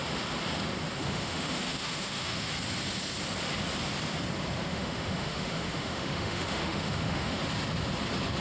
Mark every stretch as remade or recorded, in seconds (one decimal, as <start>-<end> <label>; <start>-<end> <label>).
0.0-1.0 recorded; 1.0-2.5 remade; 2.5-4.7 recorded; 4.7-7.4 remade; 7.4-8.4 recorded